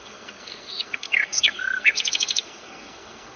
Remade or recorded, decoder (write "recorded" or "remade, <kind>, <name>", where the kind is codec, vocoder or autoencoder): remade, codec, SNAC